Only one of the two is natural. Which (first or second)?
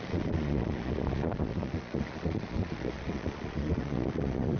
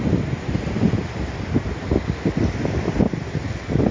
second